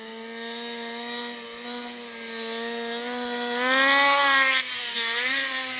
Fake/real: real